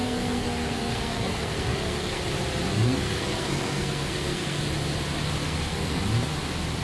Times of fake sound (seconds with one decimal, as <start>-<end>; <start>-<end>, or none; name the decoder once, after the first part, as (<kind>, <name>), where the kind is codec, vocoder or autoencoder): 0.0-2.2 (codec, SNAC); 2.7-4.6; 5.4-6.0